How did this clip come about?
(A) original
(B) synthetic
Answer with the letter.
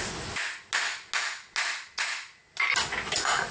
A